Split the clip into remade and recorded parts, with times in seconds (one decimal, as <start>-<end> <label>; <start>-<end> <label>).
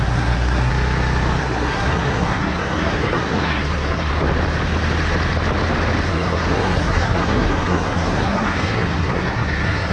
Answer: 0.0-0.7 remade; 0.7-1.4 recorded; 1.4-4.1 remade; 4.1-6.1 recorded; 6.1-9.9 remade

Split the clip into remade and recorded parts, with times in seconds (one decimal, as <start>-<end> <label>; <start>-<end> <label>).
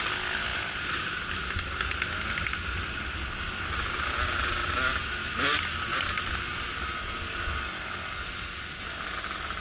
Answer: 0.0-9.6 recorded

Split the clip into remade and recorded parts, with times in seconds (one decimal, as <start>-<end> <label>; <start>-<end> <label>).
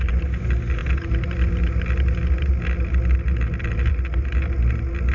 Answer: 0.0-5.1 recorded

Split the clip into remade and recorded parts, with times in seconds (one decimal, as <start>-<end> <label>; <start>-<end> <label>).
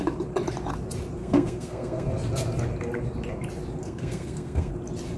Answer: 0.0-1.2 recorded; 1.2-2.1 remade; 2.1-3.8 recorded; 3.8-4.7 remade; 4.7-5.2 recorded